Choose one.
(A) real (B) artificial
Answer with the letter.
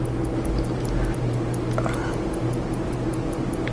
A